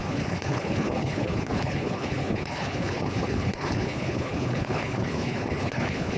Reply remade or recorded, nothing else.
remade